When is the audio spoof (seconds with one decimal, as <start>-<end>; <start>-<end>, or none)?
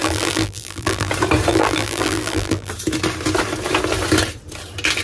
0.0-1.1; 1.5-2.7